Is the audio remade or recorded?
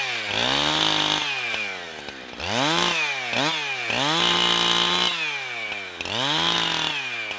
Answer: recorded